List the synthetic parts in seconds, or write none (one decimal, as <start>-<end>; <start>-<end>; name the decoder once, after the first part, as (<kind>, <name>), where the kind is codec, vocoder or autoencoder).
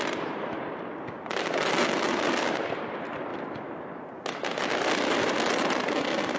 none